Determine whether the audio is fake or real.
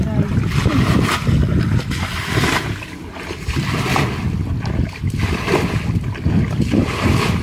real